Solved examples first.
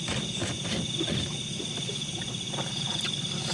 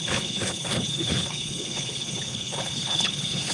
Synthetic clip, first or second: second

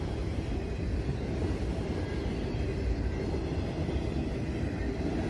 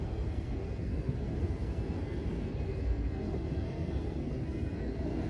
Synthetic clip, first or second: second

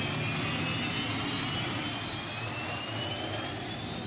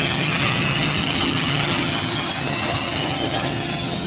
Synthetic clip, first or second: second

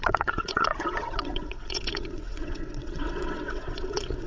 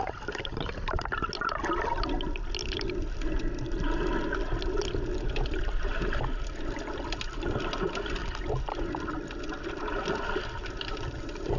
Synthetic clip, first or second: first